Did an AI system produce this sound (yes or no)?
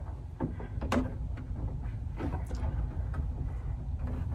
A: no